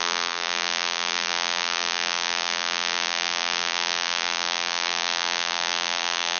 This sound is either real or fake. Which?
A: fake